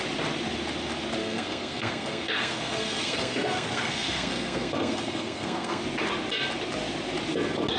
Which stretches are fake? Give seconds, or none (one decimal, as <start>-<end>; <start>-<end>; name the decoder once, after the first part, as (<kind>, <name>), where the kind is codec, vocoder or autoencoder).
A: 1.2-5.8 (codec, SNAC)